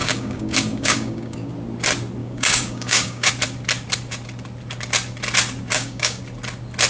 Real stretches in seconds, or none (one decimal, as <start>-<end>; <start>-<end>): 1.5-2.2; 3.3-5.7; 6.2-6.9